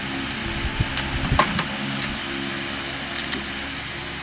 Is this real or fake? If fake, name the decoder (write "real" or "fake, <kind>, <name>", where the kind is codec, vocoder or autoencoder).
real